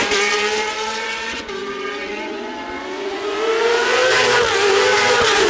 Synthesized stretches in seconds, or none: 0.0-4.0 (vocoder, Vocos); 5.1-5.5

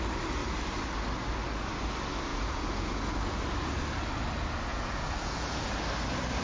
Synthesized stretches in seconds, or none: 2.3-3.1 (vocoder, Vocos); 4.7-5.7